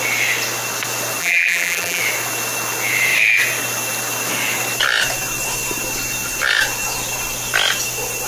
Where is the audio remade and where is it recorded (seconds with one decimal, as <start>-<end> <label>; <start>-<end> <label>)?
0.0-1.2 recorded; 1.2-2.0 remade; 2.0-8.3 recorded